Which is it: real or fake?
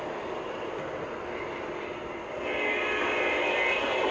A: real